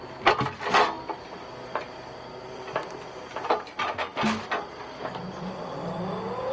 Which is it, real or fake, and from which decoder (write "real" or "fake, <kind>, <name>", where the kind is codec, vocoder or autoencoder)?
real